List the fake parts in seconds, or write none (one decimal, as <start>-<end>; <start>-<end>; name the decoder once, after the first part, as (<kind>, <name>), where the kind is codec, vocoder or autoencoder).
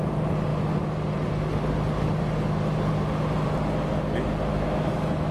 4.5-5.3 (autoencoder, DAC-VAE)